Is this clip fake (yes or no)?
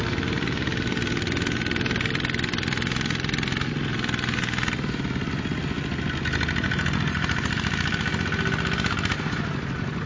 no